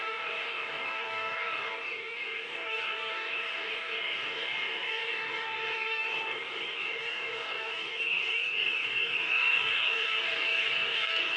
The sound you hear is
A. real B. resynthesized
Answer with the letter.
B